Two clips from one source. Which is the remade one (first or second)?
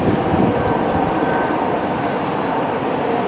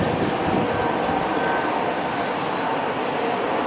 first